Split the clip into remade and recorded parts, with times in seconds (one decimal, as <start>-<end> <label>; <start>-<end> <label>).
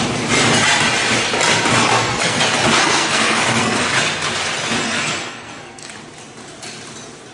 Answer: 0.0-1.8 recorded; 1.8-2.4 remade; 2.4-2.8 recorded; 2.8-3.8 remade; 3.8-4.8 recorded; 4.8-5.9 remade; 5.9-7.3 recorded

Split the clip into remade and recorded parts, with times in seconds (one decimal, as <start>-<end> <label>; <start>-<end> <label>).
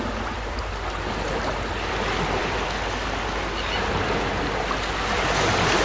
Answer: 0.0-5.8 recorded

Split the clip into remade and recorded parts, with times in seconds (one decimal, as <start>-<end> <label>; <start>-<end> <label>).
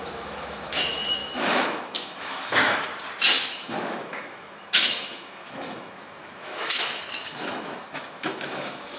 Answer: 0.0-2.9 remade; 2.9-3.4 recorded; 3.4-9.0 remade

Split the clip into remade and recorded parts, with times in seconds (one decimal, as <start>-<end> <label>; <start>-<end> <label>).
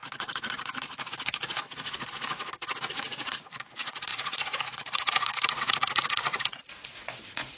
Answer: 0.0-2.9 recorded; 2.9-7.6 remade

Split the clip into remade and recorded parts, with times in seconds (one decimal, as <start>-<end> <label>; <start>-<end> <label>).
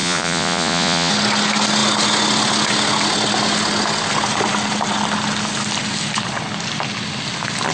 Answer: 0.0-1.1 remade; 1.1-7.7 recorded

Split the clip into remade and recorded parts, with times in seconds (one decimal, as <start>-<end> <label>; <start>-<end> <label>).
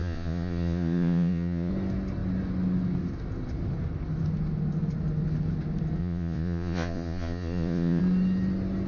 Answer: 0.0-1.7 remade; 1.7-6.0 recorded; 6.0-8.0 remade; 8.0-8.9 recorded